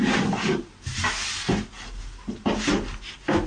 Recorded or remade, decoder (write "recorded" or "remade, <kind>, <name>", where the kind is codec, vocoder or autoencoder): recorded